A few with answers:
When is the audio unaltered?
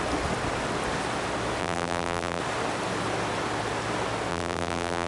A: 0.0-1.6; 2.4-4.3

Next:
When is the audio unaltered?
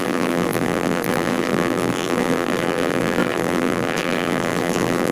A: none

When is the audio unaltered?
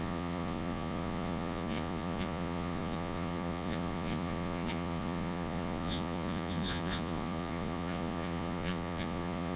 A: none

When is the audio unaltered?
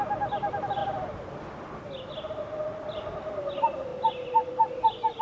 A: 0.0-5.2